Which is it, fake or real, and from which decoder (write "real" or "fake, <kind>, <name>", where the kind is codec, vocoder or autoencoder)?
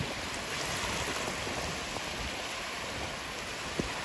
real